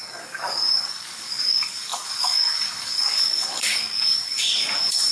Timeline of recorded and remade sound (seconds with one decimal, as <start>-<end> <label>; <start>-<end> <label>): 0.0-5.1 remade